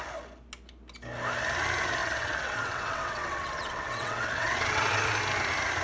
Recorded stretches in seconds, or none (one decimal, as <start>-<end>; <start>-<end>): 0.0-2.0; 5.0-5.8